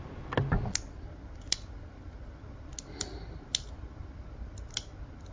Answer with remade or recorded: recorded